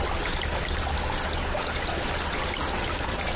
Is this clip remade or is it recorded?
recorded